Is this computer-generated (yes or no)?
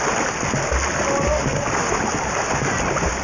no